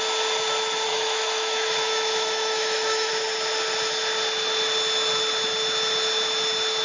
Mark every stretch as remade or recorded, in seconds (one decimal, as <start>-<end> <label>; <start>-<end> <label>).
0.0-0.9 recorded; 0.9-3.1 remade; 3.1-6.8 recorded